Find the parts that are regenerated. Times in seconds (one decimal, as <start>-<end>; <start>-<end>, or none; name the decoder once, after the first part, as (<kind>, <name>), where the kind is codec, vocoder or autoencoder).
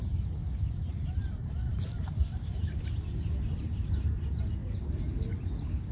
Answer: 0.4-3.9 (vocoder, BigVGAN v2); 4.6-5.3